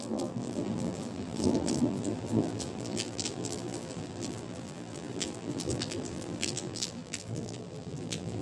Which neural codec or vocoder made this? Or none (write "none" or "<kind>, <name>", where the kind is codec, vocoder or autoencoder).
vocoder, BigVGAN v2